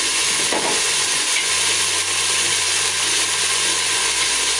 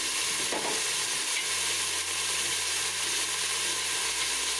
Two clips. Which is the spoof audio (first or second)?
first